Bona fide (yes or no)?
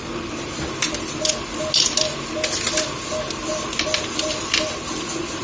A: yes